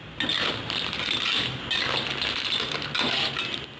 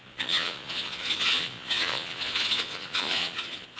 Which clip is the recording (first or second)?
first